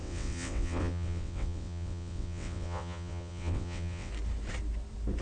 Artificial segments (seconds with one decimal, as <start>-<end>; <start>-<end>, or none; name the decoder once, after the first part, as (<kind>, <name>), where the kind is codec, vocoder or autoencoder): 0.0-4.1 (vocoder, WaveNeXt)